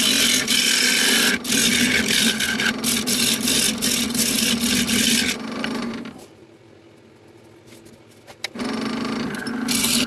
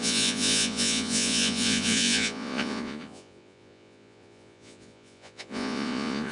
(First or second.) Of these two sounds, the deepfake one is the second